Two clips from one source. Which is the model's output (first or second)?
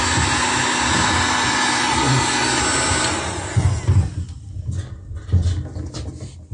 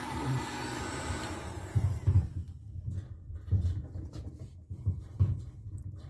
second